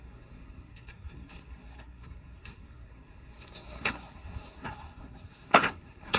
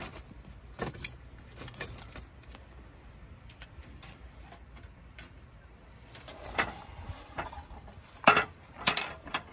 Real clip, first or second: second